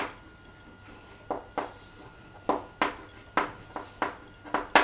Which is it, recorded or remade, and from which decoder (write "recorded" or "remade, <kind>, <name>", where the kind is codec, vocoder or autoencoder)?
recorded